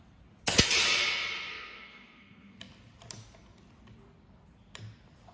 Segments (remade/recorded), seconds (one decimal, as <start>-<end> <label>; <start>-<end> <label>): 0.0-1.5 recorded; 1.5-2.6 remade; 2.6-5.3 recorded